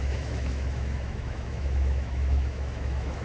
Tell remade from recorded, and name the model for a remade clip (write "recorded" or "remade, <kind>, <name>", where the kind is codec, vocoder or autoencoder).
remade, autoencoder, DAC-VAE